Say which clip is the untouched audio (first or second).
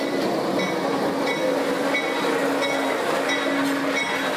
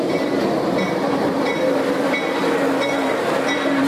first